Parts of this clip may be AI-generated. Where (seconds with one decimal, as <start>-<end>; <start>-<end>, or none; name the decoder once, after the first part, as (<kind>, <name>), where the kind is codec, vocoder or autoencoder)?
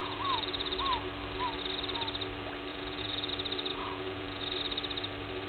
0.0-0.7 (vocoder, Vocos); 2.7-3.3; 3.7-4.4